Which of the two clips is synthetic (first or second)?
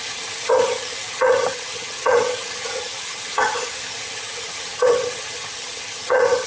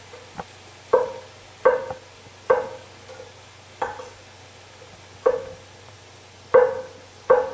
first